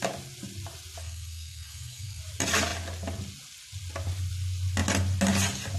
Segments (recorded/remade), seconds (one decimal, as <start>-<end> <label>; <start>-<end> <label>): 0.0-1.0 recorded; 1.0-2.2 remade; 2.2-5.8 recorded